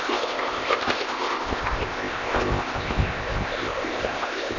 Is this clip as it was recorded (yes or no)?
no